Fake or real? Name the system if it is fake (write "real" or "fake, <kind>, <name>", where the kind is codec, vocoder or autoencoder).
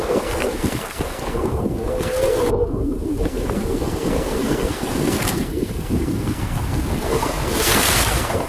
fake, codec, SNAC